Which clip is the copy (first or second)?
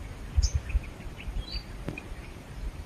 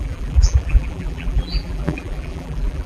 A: second